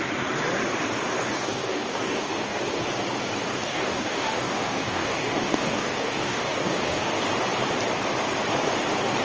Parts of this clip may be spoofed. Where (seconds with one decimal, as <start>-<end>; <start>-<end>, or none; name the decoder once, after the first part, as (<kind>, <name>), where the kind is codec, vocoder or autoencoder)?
1.3-2.6 (codec, DAC); 3.5-7.1